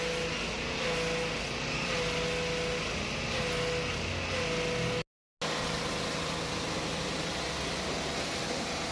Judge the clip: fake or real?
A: real